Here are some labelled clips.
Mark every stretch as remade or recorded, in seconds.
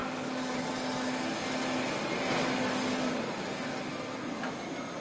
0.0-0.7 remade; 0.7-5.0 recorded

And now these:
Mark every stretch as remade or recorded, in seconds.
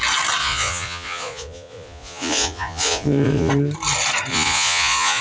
0.0-0.4 recorded; 0.4-3.5 remade; 3.5-4.3 recorded; 4.3-5.2 remade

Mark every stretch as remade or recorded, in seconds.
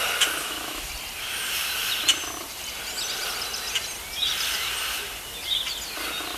0.0-0.4 recorded; 0.4-0.9 remade; 0.9-6.4 recorded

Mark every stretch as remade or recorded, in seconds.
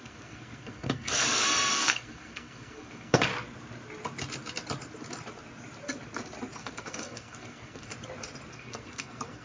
0.0-3.3 remade; 3.3-6.6 recorded; 6.6-7.9 remade; 7.9-8.5 recorded; 8.5-9.4 remade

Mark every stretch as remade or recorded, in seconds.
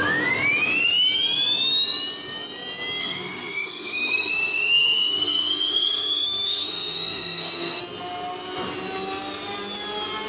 0.0-3.0 recorded; 3.0-7.8 remade; 7.8-10.3 recorded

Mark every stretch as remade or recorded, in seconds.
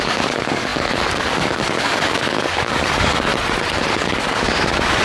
0.0-3.3 remade; 3.3-3.9 recorded; 3.9-5.0 remade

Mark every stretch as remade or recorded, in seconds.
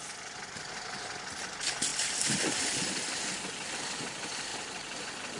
0.0-5.4 recorded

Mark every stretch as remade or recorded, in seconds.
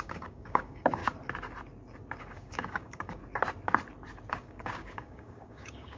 0.0-1.0 remade; 1.0-2.2 recorded; 2.2-3.2 remade; 3.2-4.3 recorded; 4.3-6.0 remade